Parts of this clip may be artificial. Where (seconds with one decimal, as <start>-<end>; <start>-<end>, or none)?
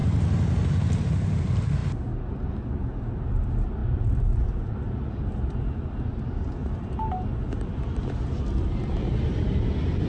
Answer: 1.0-1.8; 2.3-10.1